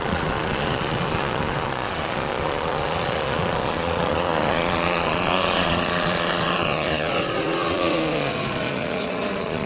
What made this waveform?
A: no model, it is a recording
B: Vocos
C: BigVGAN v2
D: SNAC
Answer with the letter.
B